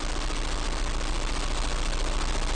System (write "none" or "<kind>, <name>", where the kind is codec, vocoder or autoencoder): none